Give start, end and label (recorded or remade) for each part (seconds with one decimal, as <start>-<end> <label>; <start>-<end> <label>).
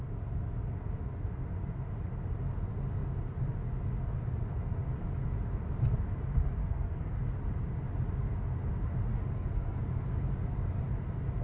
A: 0.0-6.6 recorded; 6.6-7.2 remade; 7.2-9.1 recorded; 9.1-10.2 remade; 10.2-11.4 recorded